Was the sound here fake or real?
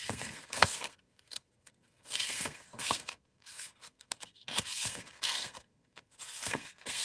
fake